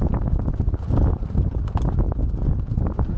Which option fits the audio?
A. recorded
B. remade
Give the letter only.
A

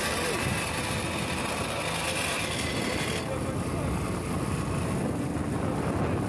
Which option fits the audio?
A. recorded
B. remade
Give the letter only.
A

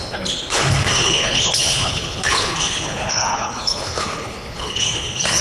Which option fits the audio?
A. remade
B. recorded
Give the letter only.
A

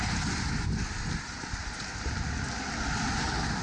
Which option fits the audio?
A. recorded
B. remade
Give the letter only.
A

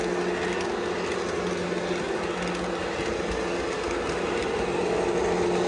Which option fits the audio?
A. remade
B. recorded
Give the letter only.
B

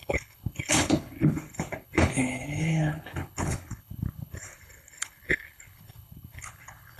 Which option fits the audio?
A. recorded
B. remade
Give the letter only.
B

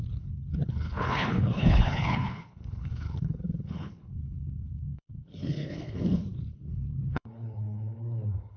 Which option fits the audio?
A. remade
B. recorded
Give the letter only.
A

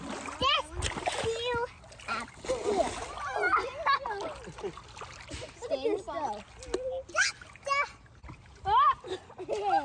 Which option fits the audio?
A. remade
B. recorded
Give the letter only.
B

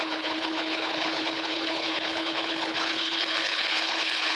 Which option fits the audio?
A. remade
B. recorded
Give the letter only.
A